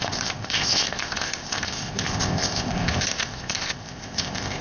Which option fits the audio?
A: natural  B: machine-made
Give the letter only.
B